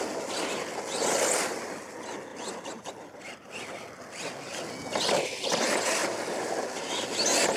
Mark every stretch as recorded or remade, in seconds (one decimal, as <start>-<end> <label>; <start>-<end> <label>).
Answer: 0.0-2.3 recorded; 2.3-2.9 remade; 2.9-7.6 recorded